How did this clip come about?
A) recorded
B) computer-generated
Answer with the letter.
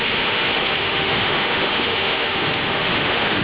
B